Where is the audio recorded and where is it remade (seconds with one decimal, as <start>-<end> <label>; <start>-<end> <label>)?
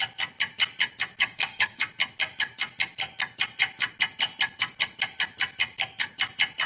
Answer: 0.0-1.2 recorded; 1.2-1.8 remade; 1.8-6.7 recorded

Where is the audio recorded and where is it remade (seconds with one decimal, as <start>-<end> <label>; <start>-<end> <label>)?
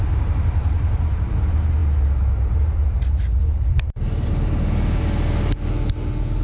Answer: 0.0-6.4 recorded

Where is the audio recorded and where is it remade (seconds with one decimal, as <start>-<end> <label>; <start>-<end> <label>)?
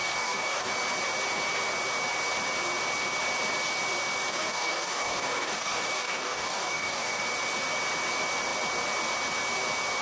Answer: 0.0-0.7 remade; 0.7-4.3 recorded; 4.3-7.2 remade; 7.2-10.0 recorded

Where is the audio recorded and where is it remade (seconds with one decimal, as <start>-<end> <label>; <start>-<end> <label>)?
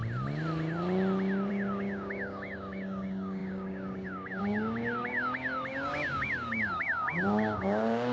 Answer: 0.0-1.5 recorded; 1.5-8.1 remade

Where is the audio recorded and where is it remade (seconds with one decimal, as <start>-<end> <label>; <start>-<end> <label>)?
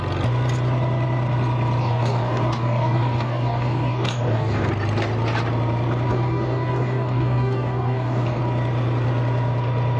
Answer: 0.0-1.8 recorded; 1.8-4.7 remade; 4.7-6.1 recorded; 6.1-8.4 remade; 8.4-10.0 recorded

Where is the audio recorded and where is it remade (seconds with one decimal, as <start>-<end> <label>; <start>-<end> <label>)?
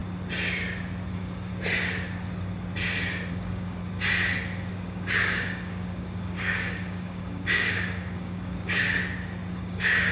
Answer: 0.0-1.1 recorded; 1.1-1.5 remade; 1.5-3.3 recorded; 3.3-3.8 remade; 3.8-4.7 recorded; 4.7-9.0 remade; 9.0-9.5 recorded; 9.5-10.1 remade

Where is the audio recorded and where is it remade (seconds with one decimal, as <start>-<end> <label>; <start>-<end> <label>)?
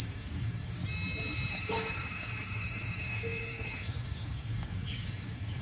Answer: 0.0-0.8 remade; 0.8-1.5 recorded; 1.5-5.6 remade